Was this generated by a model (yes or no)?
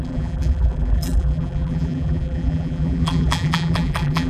yes